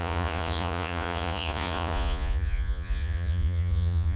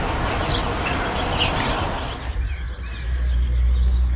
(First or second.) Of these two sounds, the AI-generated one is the first